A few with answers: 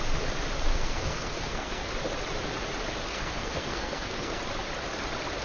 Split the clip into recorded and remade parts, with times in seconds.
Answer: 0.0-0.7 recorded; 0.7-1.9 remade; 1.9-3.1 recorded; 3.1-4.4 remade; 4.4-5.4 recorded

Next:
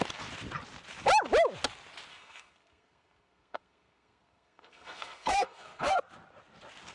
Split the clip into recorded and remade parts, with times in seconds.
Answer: 0.0-2.1 recorded; 2.1-6.0 remade; 6.0-6.9 recorded

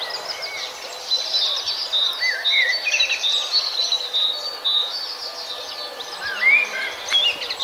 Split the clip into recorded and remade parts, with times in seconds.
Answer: 0.0-7.6 recorded

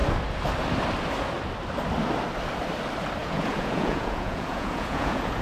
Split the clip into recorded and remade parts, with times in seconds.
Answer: 0.0-3.2 recorded; 3.2-5.4 remade